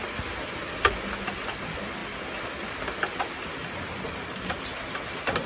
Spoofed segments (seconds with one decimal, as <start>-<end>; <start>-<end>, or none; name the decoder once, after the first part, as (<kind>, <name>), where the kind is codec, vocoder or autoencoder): none